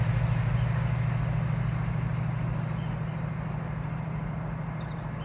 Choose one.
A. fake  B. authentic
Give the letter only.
B